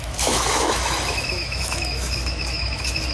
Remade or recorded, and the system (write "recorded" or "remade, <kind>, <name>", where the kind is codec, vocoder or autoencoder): remade, autoencoder, DAC-VAE